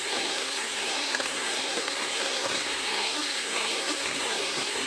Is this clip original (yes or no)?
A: no